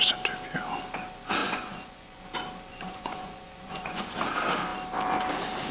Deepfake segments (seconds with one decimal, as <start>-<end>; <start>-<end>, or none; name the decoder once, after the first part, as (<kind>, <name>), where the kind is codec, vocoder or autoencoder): 1.4-2.2 (vocoder, Vocos); 2.7-4.2